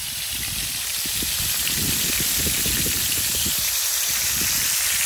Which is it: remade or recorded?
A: recorded